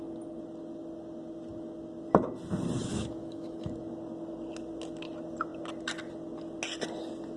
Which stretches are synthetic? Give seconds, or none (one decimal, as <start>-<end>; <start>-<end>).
2.8-3.7